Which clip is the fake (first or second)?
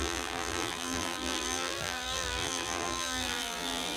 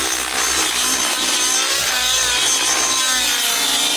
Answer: first